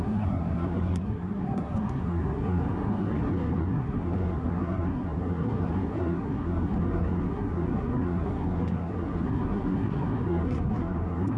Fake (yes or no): yes